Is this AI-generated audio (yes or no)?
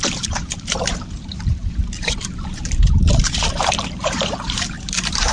yes